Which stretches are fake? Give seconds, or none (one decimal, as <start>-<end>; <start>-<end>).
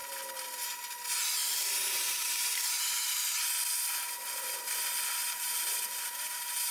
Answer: 1.4-3.3; 5.2-6.7